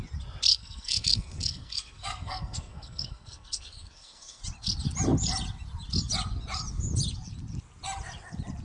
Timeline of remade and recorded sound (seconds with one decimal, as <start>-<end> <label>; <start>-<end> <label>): 0.0-0.5 recorded; 0.5-4.4 remade; 4.4-8.6 recorded